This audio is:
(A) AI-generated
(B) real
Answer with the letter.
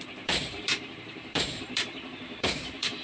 A